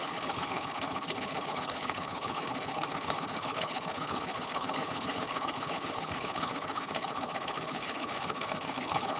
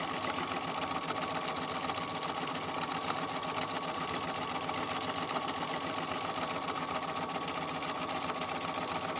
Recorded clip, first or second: second